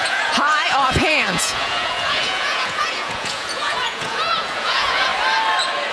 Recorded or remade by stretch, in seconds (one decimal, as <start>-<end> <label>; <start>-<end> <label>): 0.0-5.1 remade; 5.1-5.9 recorded